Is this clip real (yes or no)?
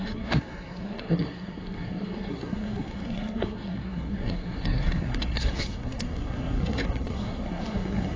no